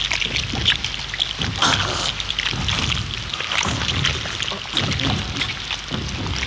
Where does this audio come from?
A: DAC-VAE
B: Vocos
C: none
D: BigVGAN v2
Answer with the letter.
C